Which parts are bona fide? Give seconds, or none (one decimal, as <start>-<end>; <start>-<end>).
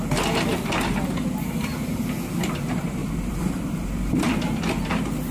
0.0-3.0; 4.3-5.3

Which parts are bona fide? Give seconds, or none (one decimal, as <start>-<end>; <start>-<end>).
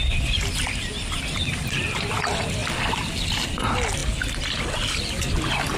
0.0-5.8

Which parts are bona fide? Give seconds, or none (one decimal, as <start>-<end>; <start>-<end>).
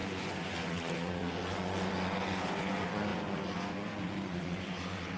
none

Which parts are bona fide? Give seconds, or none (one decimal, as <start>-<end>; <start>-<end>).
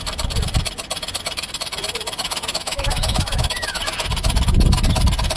0.0-2.2; 3.8-5.4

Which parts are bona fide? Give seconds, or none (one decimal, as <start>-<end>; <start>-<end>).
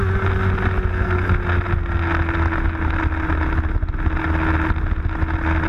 0.0-0.9; 1.4-5.7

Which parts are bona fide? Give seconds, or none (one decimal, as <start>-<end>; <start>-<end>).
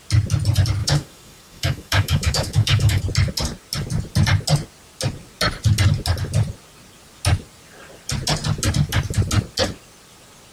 0.0-0.8; 3.0-10.5